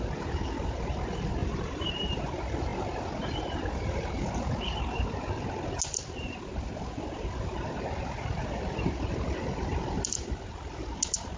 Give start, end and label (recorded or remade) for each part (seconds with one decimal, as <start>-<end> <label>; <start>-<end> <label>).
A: 0.0-1.4 recorded; 1.4-1.9 remade; 1.9-11.4 recorded